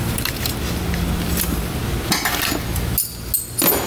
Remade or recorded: recorded